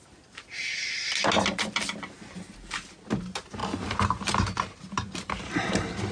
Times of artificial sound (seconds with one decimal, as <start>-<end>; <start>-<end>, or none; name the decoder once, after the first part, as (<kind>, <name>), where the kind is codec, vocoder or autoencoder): none